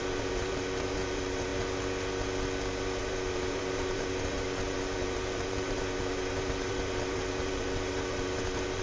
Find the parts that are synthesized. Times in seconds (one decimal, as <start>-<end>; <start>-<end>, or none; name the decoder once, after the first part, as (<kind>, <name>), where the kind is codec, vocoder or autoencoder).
0.0-1.5 (vocoder, BigVGAN v2); 3.0-8.8